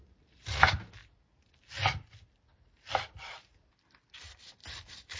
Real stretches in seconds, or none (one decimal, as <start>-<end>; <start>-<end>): 0.0-5.2